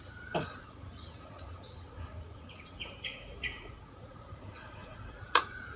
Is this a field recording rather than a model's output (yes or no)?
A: no